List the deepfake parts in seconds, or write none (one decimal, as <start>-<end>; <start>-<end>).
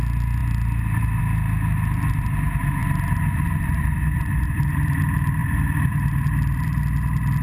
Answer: 0.4-1.2; 2.8-5.0; 5.4-6.8